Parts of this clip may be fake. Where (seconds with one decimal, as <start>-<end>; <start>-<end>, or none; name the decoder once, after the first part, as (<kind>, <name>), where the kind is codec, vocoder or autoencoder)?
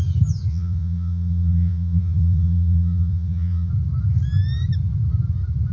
0.5-3.7 (vocoder, Vocos)